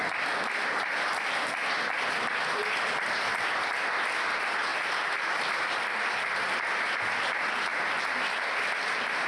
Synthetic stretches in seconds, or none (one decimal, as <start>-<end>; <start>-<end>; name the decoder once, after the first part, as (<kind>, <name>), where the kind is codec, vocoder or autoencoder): none